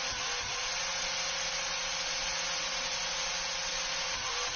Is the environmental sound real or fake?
real